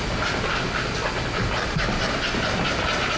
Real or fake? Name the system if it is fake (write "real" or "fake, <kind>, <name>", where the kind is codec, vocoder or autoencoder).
real